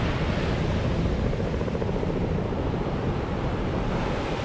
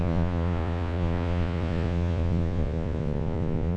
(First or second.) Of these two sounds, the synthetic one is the second